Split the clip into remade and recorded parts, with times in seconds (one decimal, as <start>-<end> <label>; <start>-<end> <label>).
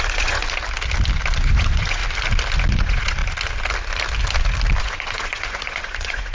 0.0-0.4 remade; 0.4-1.4 recorded; 1.4-2.0 remade; 2.0-2.7 recorded; 2.7-3.2 remade; 3.2-4.8 recorded; 4.8-6.3 remade